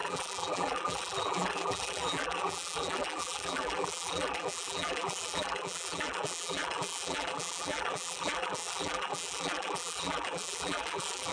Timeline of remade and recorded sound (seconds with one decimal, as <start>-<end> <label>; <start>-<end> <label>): 0.0-11.3 remade